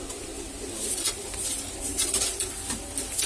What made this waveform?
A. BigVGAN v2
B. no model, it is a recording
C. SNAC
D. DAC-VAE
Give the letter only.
B